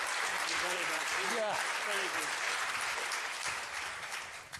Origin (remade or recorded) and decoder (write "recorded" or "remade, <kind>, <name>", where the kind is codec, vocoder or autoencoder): recorded